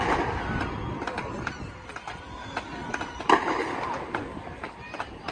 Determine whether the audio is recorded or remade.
recorded